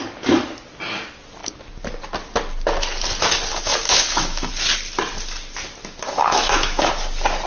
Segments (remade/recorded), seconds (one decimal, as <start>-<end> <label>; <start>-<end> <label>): 0.0-3.5 recorded; 3.5-4.5 remade; 4.5-5.8 recorded; 5.8-6.9 remade; 6.9-7.5 recorded